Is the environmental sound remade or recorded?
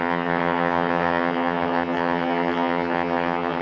remade